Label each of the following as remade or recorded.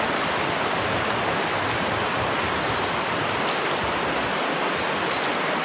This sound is recorded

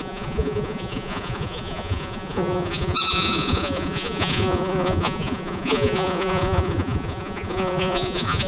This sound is remade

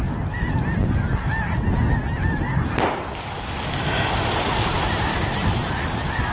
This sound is recorded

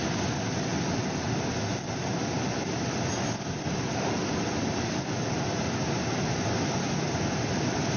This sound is recorded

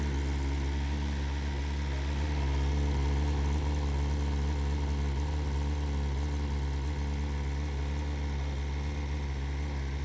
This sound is recorded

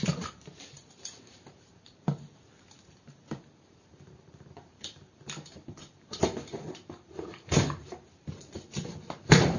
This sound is remade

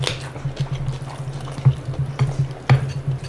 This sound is recorded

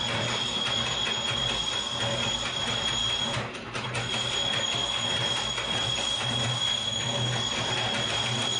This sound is recorded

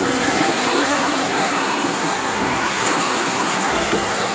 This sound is remade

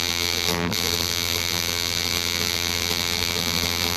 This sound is remade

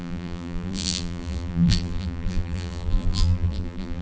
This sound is remade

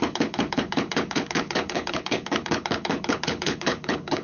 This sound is remade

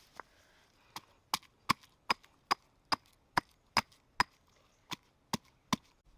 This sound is recorded